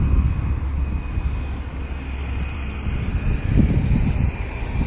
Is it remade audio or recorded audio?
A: recorded